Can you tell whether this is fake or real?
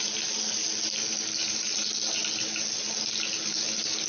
real